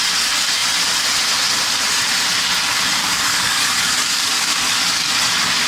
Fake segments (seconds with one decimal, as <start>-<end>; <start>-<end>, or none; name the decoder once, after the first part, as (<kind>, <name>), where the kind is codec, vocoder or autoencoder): 3.0-5.1 (codec, DAC)